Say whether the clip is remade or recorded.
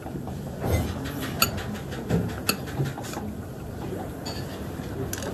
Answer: recorded